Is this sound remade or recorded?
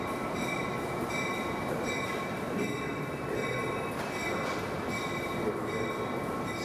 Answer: recorded